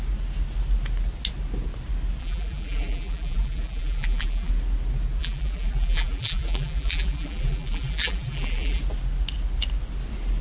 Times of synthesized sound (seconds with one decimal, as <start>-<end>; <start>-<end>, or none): 2.2-4.5; 5.2-8.8